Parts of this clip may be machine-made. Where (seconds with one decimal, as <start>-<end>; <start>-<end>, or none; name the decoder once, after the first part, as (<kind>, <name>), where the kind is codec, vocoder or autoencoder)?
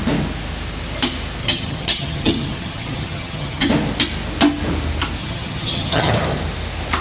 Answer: 1.4-3.7 (vocoder, HiFi-GAN); 5.2-6.1